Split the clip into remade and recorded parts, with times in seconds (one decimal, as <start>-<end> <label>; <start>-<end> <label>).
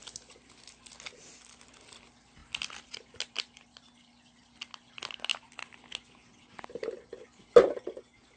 0.0-2.4 recorded; 2.4-2.9 remade; 2.9-8.4 recorded